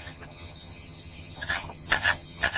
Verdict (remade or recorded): remade